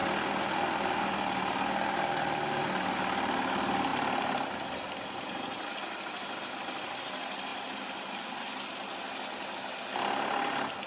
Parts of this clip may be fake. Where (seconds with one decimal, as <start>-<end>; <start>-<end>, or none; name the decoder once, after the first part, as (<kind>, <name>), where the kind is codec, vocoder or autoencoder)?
none